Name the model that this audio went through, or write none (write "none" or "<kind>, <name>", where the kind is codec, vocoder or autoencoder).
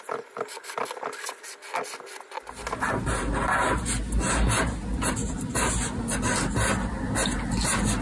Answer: none